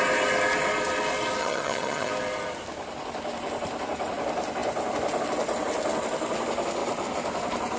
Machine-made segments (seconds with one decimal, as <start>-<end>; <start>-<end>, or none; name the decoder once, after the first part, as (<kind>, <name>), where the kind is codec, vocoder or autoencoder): 1.4-2.1 (vocoder, HiFi-GAN)